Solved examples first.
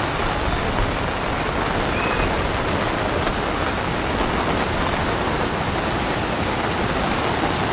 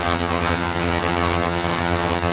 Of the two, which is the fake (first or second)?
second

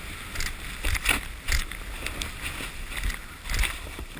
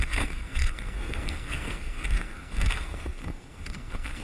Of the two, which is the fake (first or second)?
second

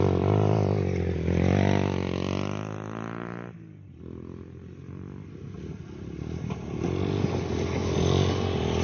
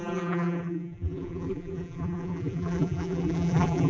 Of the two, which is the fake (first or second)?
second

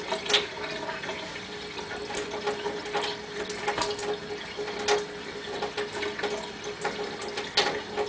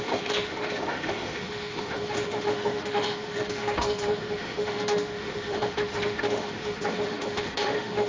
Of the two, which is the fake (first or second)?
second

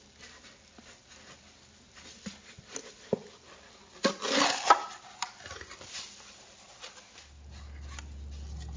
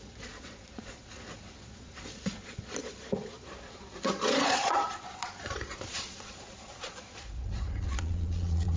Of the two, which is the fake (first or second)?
second